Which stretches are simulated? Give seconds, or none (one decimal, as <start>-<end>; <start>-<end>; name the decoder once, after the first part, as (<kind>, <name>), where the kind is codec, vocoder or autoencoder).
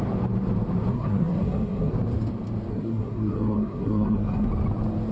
0.9-1.9 (codec, SNAC); 2.7-4.5